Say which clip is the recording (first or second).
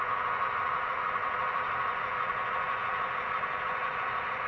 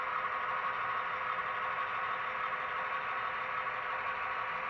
second